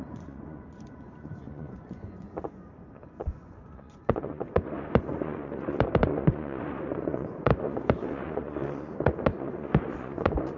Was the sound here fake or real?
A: fake